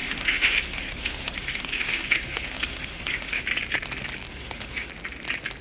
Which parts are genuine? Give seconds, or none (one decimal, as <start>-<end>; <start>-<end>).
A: 3.4-4.3; 4.9-5.6